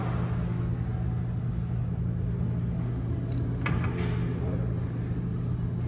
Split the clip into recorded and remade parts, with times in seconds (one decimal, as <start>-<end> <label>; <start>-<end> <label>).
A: 0.0-5.9 recorded